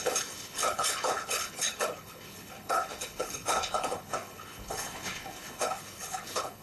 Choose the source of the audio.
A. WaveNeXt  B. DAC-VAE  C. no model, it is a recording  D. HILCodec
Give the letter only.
D